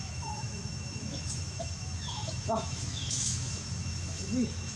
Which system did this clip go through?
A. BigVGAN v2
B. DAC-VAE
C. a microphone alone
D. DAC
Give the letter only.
B